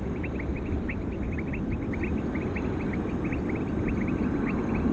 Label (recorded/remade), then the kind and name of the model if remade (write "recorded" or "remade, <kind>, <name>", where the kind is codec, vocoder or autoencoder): recorded